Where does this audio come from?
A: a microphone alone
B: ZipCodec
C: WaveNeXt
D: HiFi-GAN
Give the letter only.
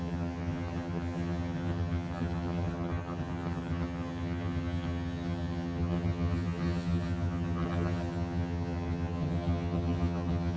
D